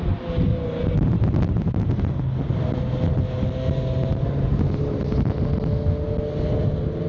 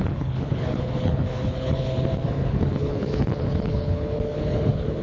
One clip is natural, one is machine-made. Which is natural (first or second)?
first